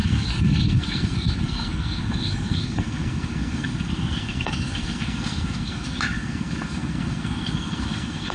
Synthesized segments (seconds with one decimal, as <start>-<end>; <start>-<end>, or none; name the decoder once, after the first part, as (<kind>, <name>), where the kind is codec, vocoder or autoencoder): 0.0-8.3 (codec, SNAC)